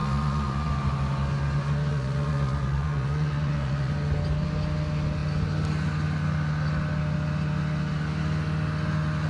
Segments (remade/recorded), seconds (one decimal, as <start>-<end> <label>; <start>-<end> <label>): 0.0-0.7 remade; 0.7-1.9 recorded; 1.9-3.9 remade; 3.9-9.3 recorded